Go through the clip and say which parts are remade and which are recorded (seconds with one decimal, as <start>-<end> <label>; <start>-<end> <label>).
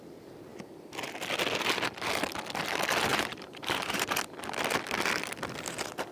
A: 0.0-3.1 recorded; 3.1-4.2 remade; 4.2-6.1 recorded